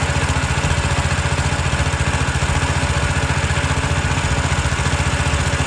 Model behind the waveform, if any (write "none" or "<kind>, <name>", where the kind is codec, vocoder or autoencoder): none